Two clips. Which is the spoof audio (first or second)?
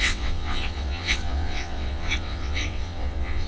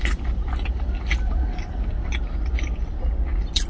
first